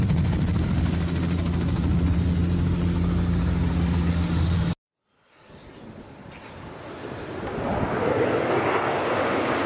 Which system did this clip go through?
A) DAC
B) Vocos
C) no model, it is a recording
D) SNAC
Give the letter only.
C